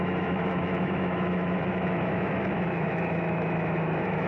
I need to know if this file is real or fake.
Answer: fake